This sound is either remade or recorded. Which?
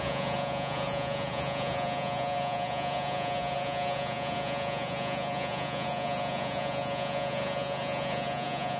remade